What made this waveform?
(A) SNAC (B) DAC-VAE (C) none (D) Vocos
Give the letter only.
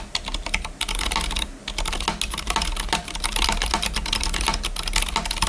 C